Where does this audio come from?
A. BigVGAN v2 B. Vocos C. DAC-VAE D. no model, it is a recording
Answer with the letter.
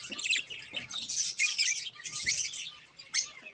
D